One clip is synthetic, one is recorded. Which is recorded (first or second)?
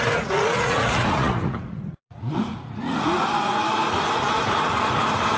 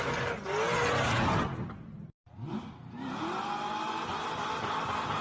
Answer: second